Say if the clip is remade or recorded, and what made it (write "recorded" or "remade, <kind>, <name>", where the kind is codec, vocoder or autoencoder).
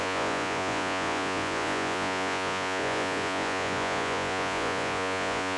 remade, vocoder, Vocos